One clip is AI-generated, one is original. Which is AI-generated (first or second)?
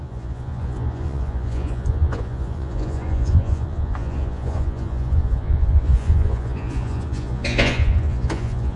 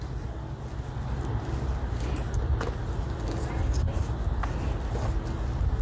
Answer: first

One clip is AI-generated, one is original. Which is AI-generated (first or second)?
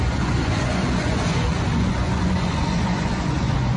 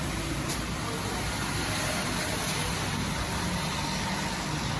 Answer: first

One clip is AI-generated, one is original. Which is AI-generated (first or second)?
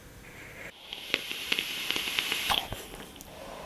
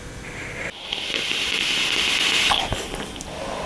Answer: first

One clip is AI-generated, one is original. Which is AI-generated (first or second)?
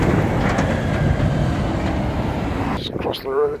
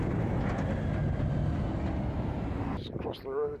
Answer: first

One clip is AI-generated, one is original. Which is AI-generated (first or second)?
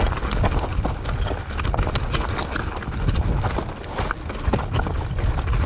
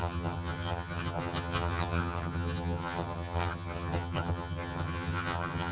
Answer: second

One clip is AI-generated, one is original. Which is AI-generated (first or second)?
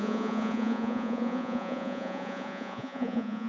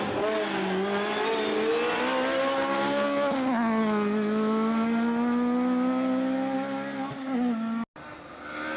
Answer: first